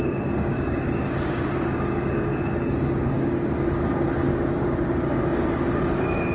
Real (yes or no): no